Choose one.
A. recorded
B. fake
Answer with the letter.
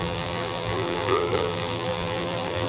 B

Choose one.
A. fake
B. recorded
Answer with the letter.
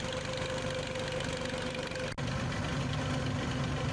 B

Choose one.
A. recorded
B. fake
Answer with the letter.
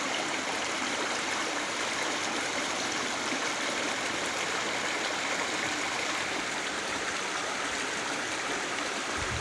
B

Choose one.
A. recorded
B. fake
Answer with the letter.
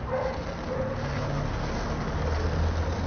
A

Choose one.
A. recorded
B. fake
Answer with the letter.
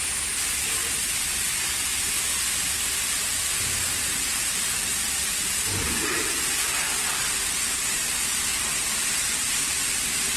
A